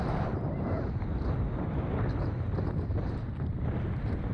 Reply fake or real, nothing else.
real